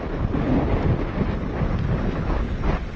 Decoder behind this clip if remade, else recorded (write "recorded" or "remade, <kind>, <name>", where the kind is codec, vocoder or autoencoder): recorded